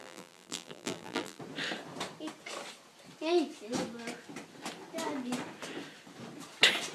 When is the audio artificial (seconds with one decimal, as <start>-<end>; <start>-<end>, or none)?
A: 0.0-1.4